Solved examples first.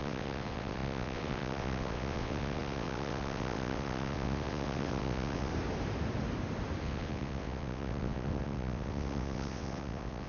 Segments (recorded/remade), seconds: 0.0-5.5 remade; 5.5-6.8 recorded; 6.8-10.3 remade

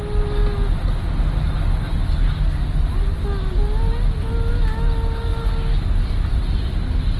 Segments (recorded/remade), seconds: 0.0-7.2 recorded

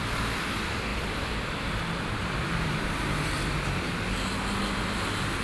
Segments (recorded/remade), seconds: 0.0-0.9 recorded; 0.9-3.3 remade; 3.3-5.4 recorded

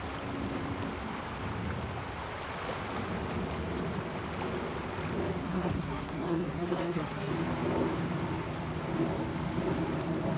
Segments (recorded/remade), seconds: 0.0-5.4 recorded; 5.4-7.3 remade; 7.3-10.4 recorded